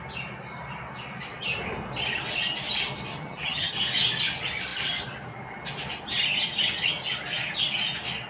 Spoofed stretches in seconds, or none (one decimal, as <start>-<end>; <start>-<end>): 3.1-3.8